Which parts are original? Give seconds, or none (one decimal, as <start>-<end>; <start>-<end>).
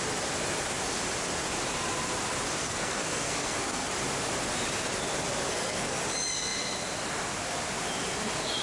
0.0-2.6; 3.9-5.5; 6.0-8.6